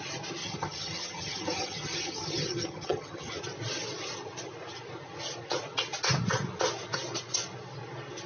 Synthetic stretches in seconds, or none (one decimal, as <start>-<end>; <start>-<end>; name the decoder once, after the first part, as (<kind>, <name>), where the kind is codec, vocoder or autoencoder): 0.4-3.4 (vocoder, HiFi-GAN)